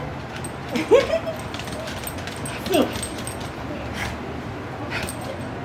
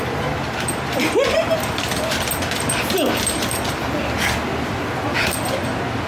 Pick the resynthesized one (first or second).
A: second